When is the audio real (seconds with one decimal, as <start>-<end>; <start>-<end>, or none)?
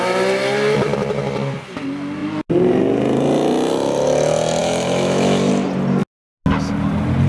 0.0-4.6; 5.5-7.3